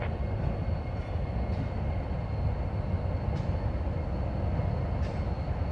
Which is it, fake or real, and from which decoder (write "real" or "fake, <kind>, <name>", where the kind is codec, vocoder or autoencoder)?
real